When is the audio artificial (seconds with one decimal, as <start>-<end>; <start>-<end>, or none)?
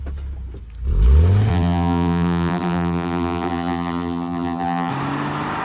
1.5-4.9